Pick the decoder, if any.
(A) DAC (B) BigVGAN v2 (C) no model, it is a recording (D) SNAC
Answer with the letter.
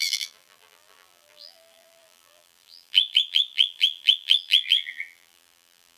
B